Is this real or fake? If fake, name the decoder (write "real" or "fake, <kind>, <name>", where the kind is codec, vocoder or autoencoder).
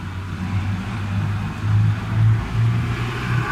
real